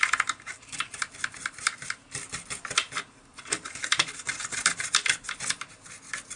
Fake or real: fake